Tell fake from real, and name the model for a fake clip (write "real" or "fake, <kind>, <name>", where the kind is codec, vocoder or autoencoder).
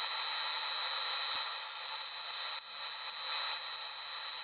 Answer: real